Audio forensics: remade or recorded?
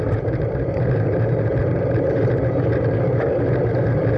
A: remade